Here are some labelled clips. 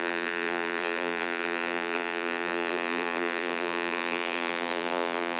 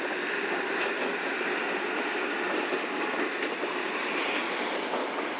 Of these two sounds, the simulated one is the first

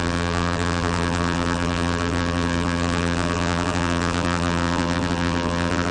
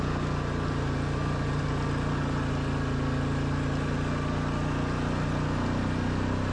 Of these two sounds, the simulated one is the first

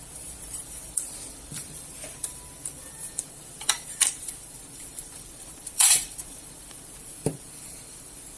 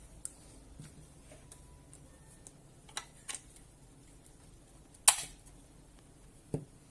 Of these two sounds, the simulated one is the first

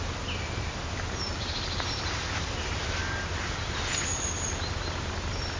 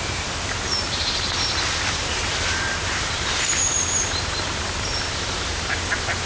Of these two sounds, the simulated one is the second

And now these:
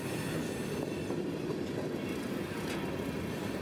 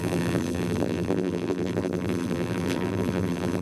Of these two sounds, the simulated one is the second